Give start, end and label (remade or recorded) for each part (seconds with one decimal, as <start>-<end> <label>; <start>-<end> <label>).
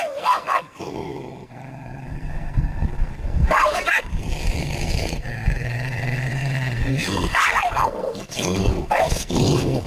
0.0-9.9 remade